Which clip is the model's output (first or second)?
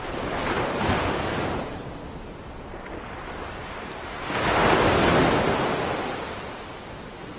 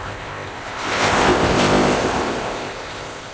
second